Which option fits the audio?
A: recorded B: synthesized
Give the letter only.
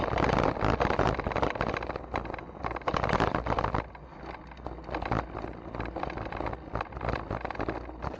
A